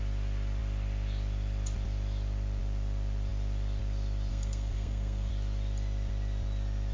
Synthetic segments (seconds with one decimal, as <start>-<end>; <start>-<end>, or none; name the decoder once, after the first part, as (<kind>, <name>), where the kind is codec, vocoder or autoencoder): 4.3-5.3 (codec, SNAC)